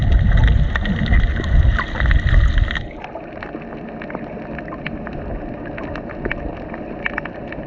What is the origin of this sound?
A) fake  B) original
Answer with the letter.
B